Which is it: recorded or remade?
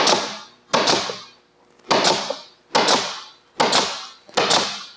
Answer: recorded